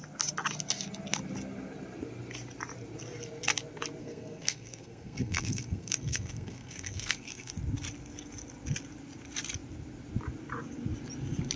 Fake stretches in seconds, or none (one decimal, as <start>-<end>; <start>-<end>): 4.0-7.5